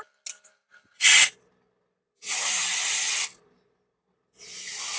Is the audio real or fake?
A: real